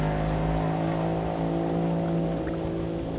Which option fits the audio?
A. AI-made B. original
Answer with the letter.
B